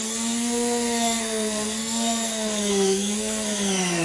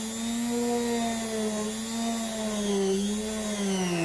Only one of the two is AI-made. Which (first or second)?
first